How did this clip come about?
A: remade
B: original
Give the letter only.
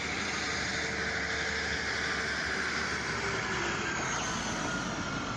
B